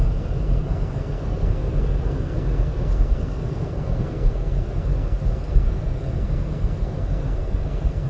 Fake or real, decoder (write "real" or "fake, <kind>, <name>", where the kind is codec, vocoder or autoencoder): fake, codec, SNAC